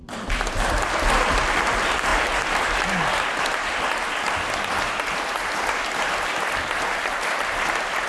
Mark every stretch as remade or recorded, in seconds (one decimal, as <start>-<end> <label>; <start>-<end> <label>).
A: 0.0-8.1 recorded